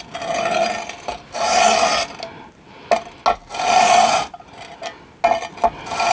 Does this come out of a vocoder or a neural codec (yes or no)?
no